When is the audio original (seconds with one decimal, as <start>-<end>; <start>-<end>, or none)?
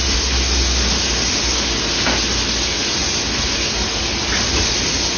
0.0-5.2